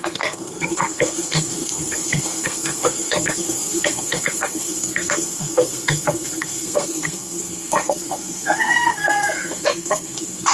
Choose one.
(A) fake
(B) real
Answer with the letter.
A